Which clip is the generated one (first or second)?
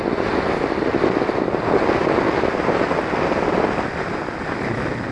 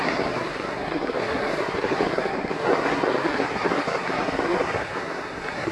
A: second